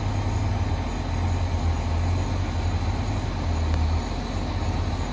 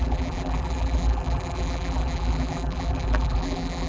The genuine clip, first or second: first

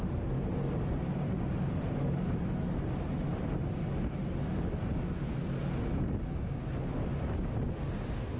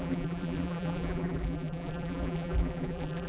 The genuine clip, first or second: first